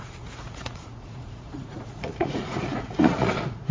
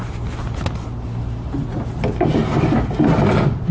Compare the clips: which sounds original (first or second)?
second